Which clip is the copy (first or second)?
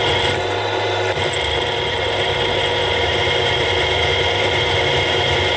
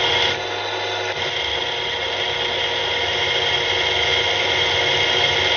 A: first